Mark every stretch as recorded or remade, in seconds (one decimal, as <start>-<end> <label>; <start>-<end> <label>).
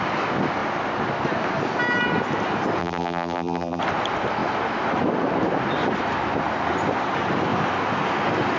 0.0-2.8 recorded; 2.8-3.8 remade; 3.8-8.6 recorded